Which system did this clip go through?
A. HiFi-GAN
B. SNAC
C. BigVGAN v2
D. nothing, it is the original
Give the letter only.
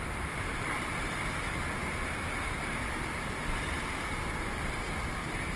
D